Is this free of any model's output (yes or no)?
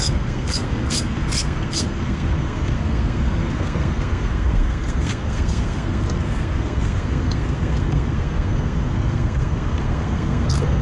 no